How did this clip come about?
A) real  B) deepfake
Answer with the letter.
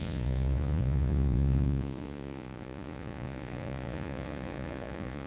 B